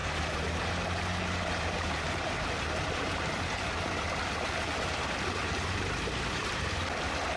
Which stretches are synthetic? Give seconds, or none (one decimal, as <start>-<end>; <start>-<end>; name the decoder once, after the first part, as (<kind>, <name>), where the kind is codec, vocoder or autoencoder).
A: 0.0-3.9 (vocoder, BigVGAN v2); 5.4-6.4